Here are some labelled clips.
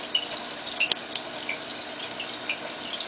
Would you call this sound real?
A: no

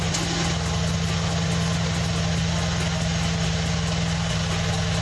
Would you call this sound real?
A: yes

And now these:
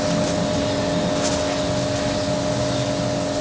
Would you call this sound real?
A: yes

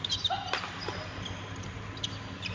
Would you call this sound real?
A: no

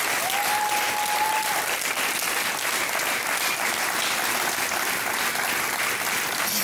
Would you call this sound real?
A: yes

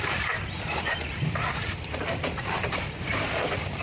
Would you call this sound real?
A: no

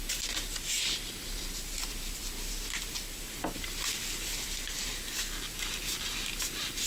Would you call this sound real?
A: yes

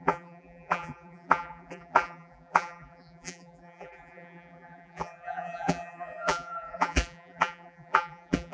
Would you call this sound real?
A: no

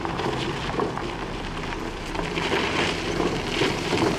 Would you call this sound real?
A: no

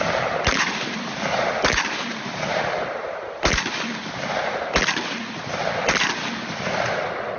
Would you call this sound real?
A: yes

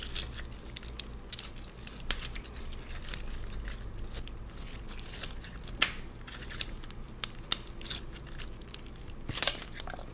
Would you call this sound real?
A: yes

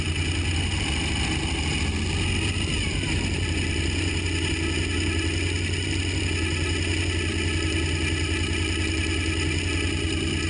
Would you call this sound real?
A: yes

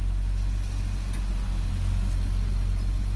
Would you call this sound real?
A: yes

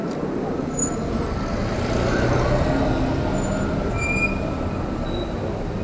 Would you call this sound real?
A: yes